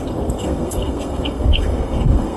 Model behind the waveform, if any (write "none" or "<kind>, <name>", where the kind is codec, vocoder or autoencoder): codec, SNAC